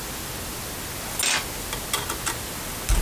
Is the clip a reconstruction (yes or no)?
no